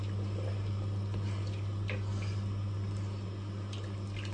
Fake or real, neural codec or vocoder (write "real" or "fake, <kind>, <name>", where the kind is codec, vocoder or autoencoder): real